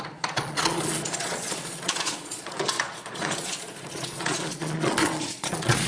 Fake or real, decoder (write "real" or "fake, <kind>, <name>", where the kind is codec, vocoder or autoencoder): fake, vocoder, Vocos